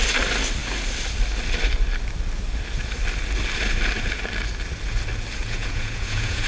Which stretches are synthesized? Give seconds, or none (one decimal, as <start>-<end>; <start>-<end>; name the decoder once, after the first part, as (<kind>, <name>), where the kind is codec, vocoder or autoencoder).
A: 5.4-6.5 (vocoder, Vocos)